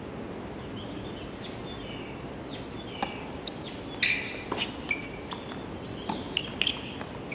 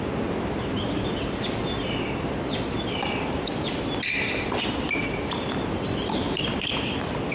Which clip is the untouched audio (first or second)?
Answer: first